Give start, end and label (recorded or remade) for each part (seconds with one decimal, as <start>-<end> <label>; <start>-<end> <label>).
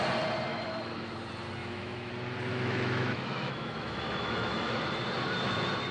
0.0-0.5 recorded; 0.5-1.1 remade; 1.1-1.6 recorded; 1.6-2.1 remade; 2.1-2.5 recorded; 2.5-4.8 remade; 4.8-5.9 recorded